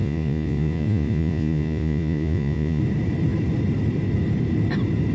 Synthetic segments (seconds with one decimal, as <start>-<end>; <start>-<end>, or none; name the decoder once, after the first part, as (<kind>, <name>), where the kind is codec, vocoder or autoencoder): 0.0-2.8 (vocoder, Vocos)